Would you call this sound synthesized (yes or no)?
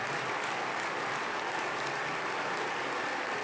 no